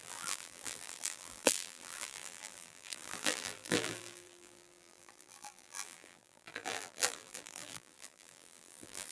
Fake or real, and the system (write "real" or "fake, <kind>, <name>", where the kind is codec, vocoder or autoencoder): fake, vocoder, BigVGAN v2